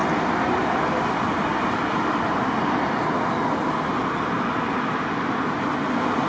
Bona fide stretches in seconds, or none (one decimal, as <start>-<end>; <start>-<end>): 0.0-6.3

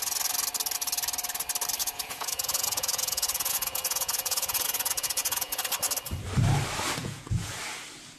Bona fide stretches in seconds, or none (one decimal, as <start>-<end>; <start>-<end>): 0.0-1.8; 5.6-7.0; 7.6-8.2

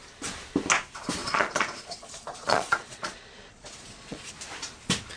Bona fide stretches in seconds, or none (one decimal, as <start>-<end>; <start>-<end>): 0.0-1.2; 4.3-5.2

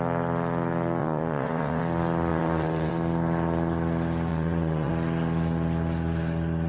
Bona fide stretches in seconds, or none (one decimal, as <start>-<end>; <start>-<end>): 0.0-1.0; 1.8-2.3; 2.9-4.3; 4.9-6.7

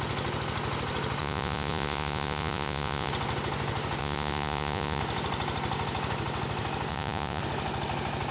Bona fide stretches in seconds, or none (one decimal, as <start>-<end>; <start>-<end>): 0.0-1.2; 3.1-4.0; 5.0-6.9; 7.4-8.3

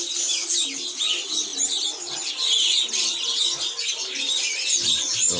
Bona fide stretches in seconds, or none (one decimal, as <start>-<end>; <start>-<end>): 0.0-5.4